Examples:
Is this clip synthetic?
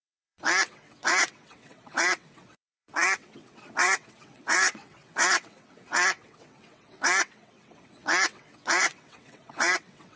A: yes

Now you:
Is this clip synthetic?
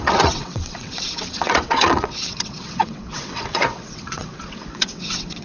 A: yes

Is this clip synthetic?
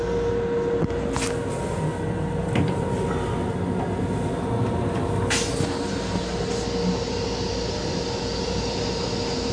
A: no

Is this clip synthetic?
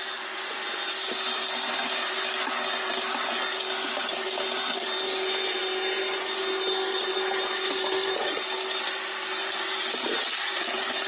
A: no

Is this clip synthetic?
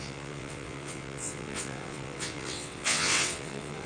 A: yes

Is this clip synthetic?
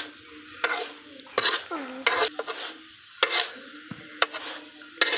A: no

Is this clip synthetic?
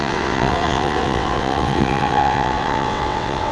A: yes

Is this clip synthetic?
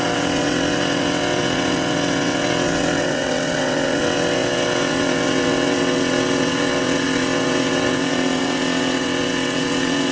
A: yes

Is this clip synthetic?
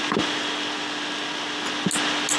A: no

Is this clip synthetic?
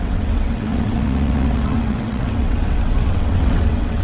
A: yes